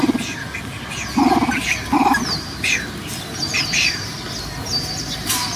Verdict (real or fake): real